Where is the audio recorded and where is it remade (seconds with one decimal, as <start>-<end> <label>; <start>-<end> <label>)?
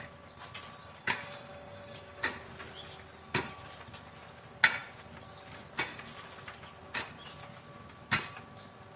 0.0-0.8 recorded; 0.8-2.2 remade; 2.2-9.0 recorded